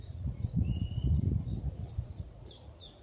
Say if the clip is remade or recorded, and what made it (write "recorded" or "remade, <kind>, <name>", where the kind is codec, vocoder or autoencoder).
remade, vocoder, Vocos